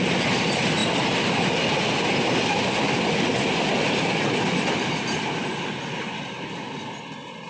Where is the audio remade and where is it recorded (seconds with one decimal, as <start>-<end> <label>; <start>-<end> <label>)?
0.0-7.5 recorded

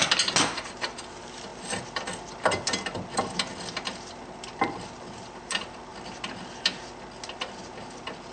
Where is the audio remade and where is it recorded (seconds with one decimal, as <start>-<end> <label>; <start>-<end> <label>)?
0.0-8.3 recorded

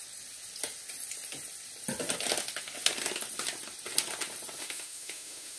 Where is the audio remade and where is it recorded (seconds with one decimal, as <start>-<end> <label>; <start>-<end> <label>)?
0.0-4.6 recorded; 4.6-5.6 remade

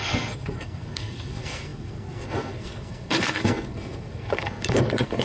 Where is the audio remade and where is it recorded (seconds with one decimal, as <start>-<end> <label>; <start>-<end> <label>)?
0.0-5.2 remade

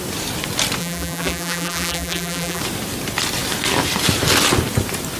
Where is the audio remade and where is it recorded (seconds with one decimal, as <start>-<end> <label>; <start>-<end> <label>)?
0.0-0.8 recorded; 0.8-2.6 remade; 2.6-5.2 recorded

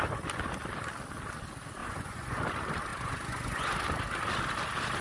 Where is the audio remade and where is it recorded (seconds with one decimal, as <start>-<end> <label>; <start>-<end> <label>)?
0.0-1.8 recorded; 1.8-2.4 remade; 2.4-2.9 recorded; 2.9-3.7 remade; 3.7-5.0 recorded

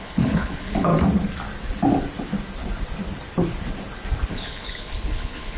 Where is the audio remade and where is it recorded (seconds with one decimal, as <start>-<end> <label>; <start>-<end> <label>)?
0.0-0.9 remade; 0.9-4.3 recorded; 4.3-5.6 remade